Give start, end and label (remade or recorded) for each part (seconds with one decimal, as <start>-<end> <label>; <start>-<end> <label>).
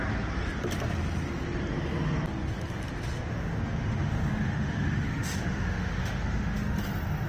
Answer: 0.0-3.3 recorded; 3.3-6.8 remade; 6.8-7.3 recorded